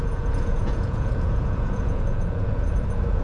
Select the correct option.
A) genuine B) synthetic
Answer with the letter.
B